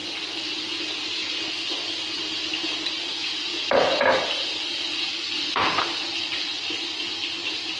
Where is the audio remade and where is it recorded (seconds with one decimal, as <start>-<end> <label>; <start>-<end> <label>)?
0.0-7.8 recorded